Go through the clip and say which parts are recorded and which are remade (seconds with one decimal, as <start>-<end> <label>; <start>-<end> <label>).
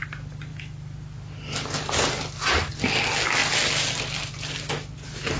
0.0-5.4 recorded